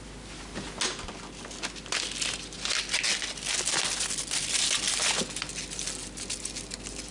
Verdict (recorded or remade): recorded